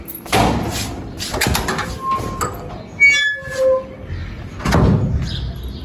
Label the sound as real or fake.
real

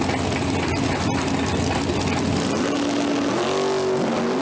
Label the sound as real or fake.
real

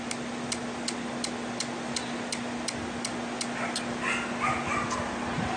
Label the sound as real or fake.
real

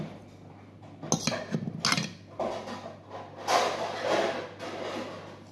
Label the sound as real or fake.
real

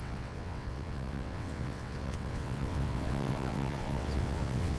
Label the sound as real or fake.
fake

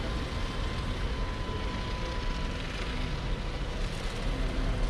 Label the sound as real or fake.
real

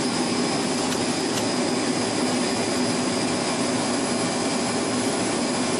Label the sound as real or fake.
real